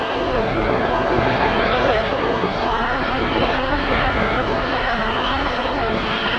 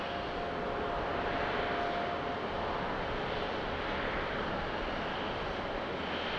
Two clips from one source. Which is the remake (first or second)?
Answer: first